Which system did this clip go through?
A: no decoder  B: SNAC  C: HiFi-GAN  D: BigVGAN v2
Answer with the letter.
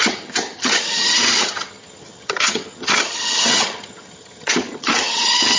C